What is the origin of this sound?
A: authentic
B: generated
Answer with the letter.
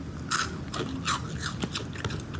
A